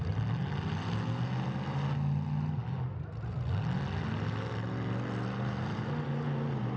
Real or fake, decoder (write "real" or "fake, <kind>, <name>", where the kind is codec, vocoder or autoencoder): real